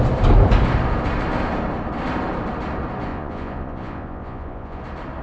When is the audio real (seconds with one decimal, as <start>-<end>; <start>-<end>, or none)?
0.0-3.1; 4.8-5.2